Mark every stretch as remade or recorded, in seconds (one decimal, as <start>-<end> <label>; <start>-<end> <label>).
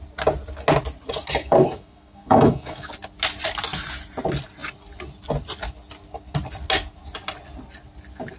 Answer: 0.0-1.4 recorded; 1.4-2.9 remade; 2.9-8.4 recorded